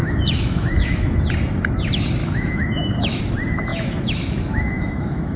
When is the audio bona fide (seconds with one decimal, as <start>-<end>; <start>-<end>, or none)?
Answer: 1.2-2.2; 3.2-3.7